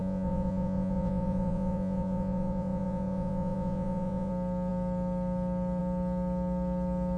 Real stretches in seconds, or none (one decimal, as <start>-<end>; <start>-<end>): 4.3-7.2

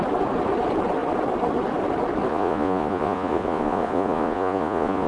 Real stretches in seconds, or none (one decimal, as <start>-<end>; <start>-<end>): 0.0-2.3